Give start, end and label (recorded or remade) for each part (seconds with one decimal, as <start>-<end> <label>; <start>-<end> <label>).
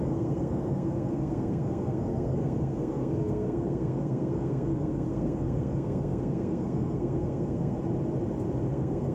0.0-7.8 remade; 7.8-8.7 recorded; 8.7-9.1 remade